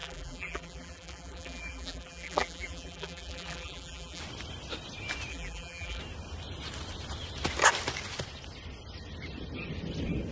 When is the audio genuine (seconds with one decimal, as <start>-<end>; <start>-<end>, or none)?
4.2-5.3; 6.0-10.3